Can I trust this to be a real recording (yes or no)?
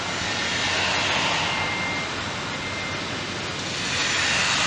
yes